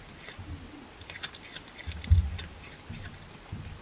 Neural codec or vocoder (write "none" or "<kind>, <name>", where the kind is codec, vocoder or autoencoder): none